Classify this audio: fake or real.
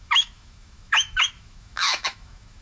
fake